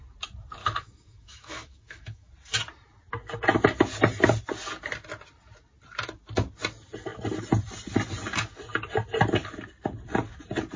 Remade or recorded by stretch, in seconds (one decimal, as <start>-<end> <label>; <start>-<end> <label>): 0.0-0.6 recorded; 0.6-2.3 remade; 2.3-10.8 recorded